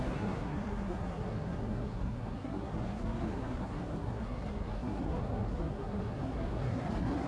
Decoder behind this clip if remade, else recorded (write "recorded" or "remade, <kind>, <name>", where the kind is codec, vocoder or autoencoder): remade, codec, SNAC